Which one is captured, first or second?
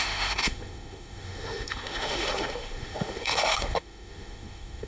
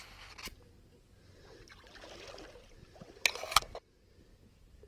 second